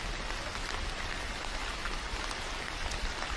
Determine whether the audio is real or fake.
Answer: real